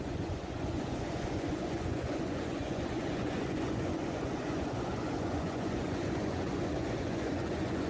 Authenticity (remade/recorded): remade